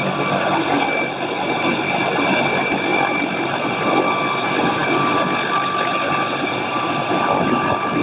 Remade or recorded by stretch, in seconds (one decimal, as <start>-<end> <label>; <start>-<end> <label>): 0.0-2.9 recorded; 2.9-3.9 remade; 3.9-8.0 recorded